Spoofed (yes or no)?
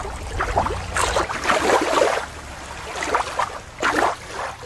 no